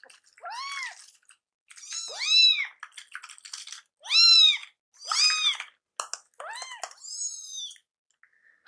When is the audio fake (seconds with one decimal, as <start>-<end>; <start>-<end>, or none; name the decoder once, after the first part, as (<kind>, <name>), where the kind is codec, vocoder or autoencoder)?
none